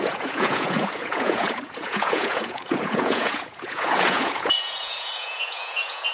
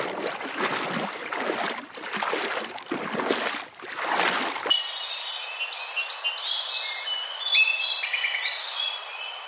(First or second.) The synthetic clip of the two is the first